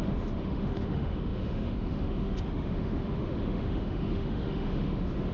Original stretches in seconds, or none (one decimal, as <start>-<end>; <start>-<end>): none